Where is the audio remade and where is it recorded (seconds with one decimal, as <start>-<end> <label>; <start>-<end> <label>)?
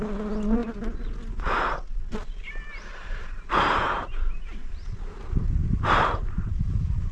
0.0-2.9 recorded; 2.9-4.8 remade; 4.8-5.6 recorded; 5.6-7.1 remade